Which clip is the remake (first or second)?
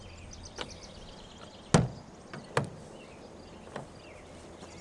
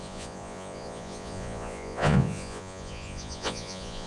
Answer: second